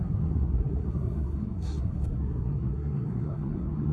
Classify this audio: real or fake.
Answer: fake